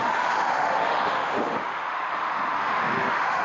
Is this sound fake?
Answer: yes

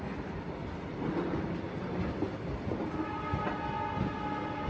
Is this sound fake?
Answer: no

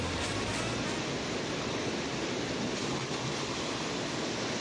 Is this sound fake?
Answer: no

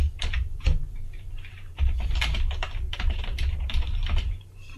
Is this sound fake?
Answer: yes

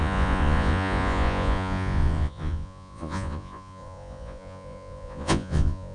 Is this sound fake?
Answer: yes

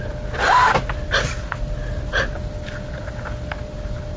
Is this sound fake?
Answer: no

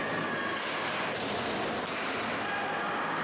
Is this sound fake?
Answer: no